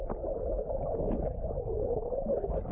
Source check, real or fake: real